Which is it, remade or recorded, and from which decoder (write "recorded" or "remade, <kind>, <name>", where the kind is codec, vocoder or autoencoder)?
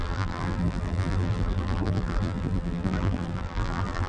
remade, vocoder, BigVGAN v2